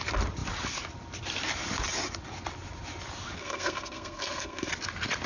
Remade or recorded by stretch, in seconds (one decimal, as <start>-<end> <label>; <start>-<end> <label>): 0.0-3.4 recorded; 3.4-4.7 remade; 4.7-5.3 recorded